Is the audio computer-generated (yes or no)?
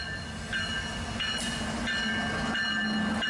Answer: no